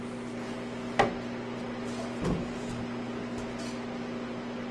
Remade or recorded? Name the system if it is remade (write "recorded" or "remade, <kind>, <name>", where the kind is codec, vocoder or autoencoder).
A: recorded